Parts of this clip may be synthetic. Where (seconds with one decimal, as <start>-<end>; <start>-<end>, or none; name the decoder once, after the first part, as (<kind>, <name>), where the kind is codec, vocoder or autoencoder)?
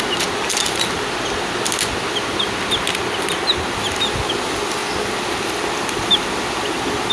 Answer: none